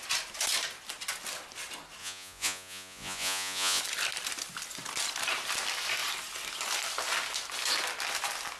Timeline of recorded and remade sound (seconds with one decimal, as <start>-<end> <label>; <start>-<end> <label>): 0.0-2.0 recorded; 2.0-3.8 remade; 3.8-8.6 recorded